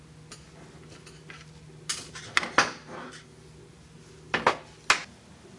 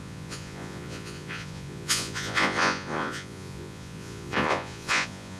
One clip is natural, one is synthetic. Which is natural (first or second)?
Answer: first